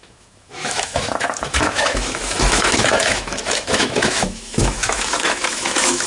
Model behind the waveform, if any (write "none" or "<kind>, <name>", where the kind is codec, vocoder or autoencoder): autoencoder, DAC-VAE